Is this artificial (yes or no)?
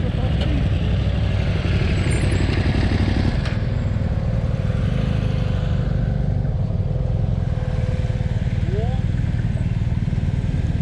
no